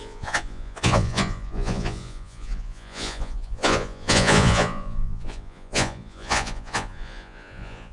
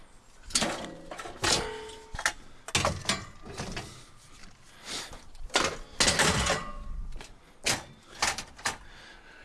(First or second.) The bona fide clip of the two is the second